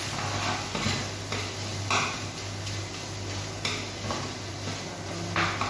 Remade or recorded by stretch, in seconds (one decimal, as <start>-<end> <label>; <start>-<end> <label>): 0.0-5.7 recorded